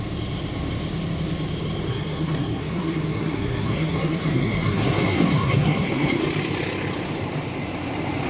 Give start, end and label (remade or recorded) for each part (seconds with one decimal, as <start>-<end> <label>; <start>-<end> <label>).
0.0-1.9 recorded; 1.9-6.2 remade; 6.2-8.3 recorded